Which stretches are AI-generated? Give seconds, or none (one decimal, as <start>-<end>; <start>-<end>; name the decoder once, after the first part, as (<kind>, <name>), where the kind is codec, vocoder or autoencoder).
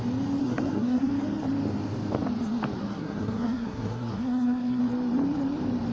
0.4-1.1 (codec, SNAC); 2.8-4.8